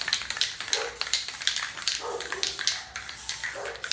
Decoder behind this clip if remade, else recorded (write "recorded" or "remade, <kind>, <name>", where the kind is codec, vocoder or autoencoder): recorded